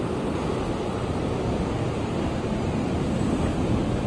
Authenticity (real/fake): real